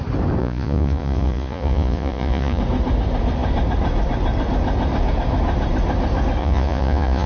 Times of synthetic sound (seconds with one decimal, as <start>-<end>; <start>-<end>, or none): 0.4-2.6; 6.4-7.3